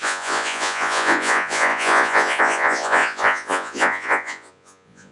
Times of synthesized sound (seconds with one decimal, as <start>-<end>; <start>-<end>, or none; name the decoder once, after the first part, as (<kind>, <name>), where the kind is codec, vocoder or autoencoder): 0.0-5.1 (vocoder, Vocos)